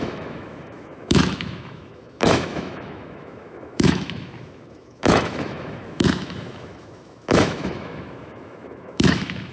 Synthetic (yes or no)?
yes